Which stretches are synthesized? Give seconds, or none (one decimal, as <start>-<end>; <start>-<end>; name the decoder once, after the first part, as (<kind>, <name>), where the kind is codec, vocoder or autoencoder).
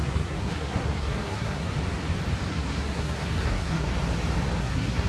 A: 0.0-1.7 (codec, SNAC); 2.5-3.9; 4.6-5.1